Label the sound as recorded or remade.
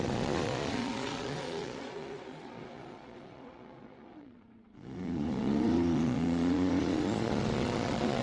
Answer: remade